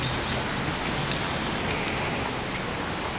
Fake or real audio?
real